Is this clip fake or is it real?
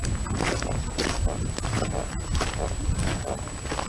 real